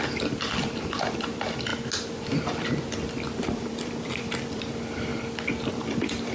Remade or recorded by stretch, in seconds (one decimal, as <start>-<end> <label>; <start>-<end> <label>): 0.0-1.7 remade; 1.7-3.5 recorded; 3.5-5.1 remade; 5.1-5.7 recorded; 5.7-6.3 remade